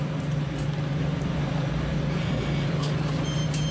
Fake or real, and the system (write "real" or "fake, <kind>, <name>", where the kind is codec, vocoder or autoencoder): fake, vocoder, BigVGAN v2